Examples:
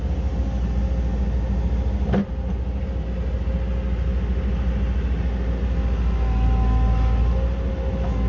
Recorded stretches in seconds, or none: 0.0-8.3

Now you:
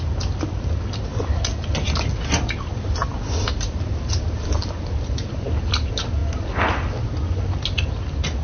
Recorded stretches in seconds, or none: 0.0-8.4